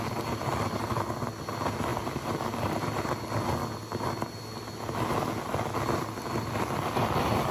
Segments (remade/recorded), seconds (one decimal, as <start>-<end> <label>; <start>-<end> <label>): 0.0-7.5 recorded